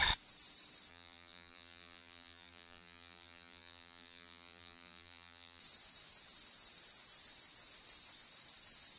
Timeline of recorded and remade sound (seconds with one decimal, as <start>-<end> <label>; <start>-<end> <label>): 0.0-0.9 recorded; 0.9-5.6 remade; 5.6-9.0 recorded